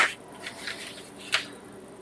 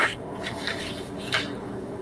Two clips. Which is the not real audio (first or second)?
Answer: second